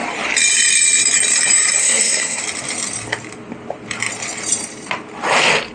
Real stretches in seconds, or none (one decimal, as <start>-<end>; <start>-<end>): 0.0-1.8; 2.4-5.7